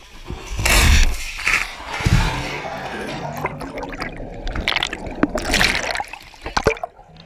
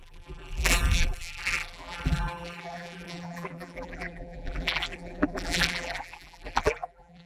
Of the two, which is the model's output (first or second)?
second